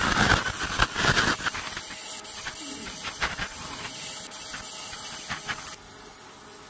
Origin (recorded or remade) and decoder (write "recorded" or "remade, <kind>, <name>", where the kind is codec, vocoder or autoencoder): recorded